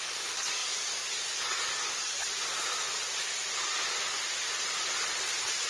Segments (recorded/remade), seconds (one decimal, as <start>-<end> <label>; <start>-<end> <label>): 0.0-2.2 remade; 2.2-5.7 recorded